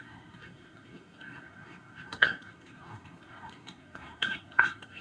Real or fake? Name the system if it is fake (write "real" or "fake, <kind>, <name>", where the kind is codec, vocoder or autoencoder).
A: fake, codec, SNAC